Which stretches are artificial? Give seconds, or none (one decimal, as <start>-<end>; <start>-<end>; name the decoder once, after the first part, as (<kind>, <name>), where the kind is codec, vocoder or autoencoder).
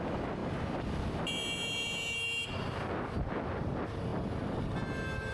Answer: none